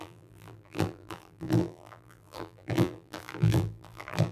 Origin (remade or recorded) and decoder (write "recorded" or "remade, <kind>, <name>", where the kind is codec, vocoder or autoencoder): remade, vocoder, BigVGAN v2